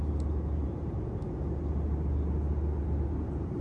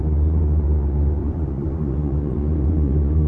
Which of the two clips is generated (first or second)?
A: second